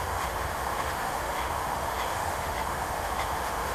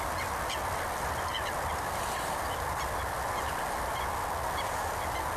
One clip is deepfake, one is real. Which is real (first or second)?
second